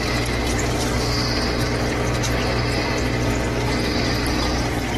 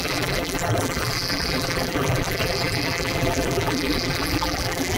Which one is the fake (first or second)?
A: second